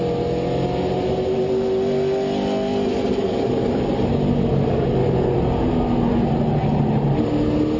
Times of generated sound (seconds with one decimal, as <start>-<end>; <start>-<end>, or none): none